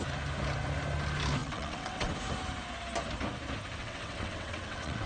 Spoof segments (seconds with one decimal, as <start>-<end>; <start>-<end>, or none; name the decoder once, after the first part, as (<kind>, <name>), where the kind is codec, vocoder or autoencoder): 1.4-2.1 (vocoder, WaveNeXt); 3.8-5.1